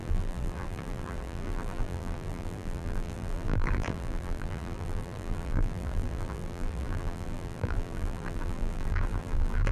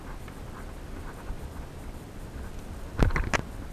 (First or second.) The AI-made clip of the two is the first